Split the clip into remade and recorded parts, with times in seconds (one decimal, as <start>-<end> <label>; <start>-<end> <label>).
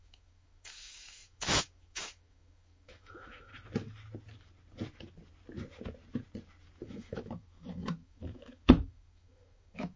0.0-3.5 remade; 3.5-6.8 recorded; 6.8-10.0 remade